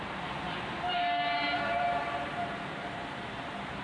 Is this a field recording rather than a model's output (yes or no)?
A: no